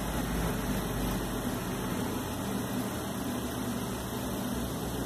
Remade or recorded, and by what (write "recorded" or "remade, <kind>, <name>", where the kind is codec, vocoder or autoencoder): recorded